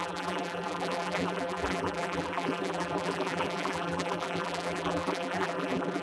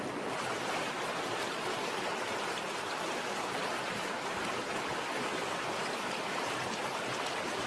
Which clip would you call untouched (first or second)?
second